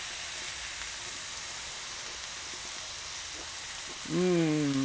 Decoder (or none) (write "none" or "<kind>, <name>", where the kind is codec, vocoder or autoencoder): none